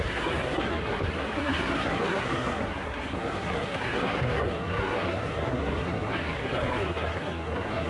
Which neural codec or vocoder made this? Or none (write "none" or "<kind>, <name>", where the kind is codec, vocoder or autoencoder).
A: codec, SNAC